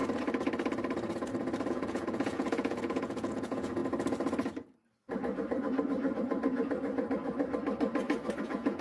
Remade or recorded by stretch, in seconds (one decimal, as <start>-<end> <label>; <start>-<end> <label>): 0.0-1.7 recorded; 1.7-3.8 remade; 3.8-8.4 recorded; 8.4-8.8 remade